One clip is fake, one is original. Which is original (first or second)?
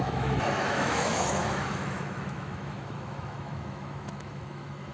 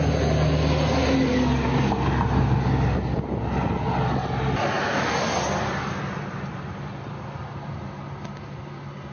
second